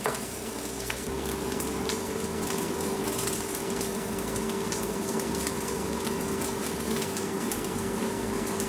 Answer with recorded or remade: remade